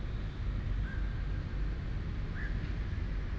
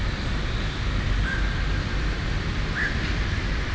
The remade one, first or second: second